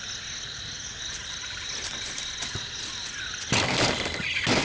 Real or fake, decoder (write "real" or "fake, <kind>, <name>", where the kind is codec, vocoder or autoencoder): real